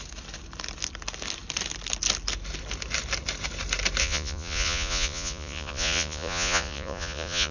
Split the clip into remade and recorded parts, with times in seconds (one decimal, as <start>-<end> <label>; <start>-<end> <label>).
0.0-4.0 recorded; 4.0-7.5 remade